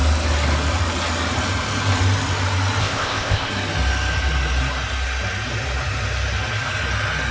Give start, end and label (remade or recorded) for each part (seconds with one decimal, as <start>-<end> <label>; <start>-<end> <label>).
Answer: 0.0-2.8 recorded; 2.8-3.5 remade; 3.5-7.3 recorded